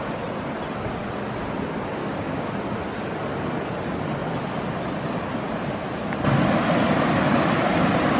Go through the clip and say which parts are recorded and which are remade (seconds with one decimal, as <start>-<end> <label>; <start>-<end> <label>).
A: 0.0-2.0 recorded; 2.0-2.5 remade; 2.5-8.2 recorded